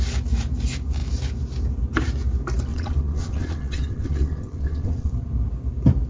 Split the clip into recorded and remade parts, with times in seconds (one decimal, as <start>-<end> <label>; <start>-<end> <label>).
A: 0.0-2.7 recorded; 2.7-5.1 remade; 5.1-6.1 recorded